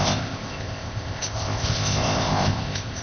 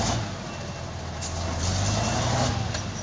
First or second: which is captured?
second